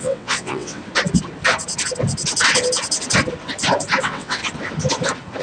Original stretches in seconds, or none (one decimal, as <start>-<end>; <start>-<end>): 0.8-4.0; 4.4-5.4